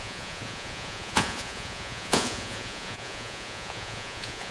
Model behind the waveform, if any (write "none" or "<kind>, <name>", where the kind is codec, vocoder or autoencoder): vocoder, Vocos